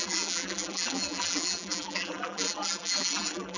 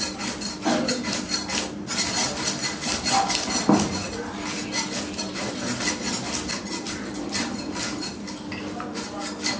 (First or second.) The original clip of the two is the second